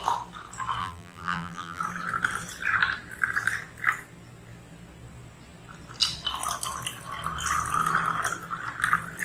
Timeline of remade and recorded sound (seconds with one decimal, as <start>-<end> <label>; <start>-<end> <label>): 0.0-0.8 recorded; 0.8-1.8 remade; 1.8-9.2 recorded